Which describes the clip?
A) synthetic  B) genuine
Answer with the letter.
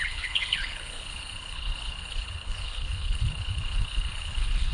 A